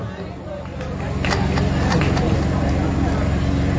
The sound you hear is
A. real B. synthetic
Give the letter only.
A